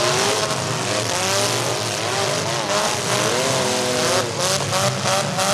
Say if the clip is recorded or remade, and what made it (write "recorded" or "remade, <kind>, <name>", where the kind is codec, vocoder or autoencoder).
recorded